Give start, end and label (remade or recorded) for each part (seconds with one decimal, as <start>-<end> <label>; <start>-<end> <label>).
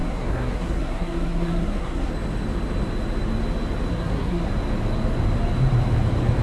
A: 0.0-2.1 remade; 2.1-3.9 recorded; 3.9-4.5 remade; 4.5-6.4 recorded